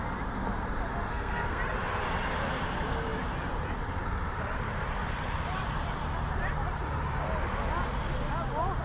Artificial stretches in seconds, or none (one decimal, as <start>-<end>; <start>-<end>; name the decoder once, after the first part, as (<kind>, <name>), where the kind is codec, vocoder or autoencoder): 1.1-1.6 (codec, SNAC)